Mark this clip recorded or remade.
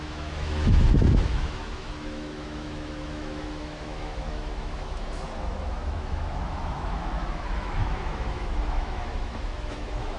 remade